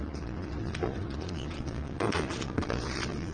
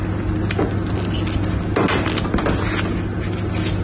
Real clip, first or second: second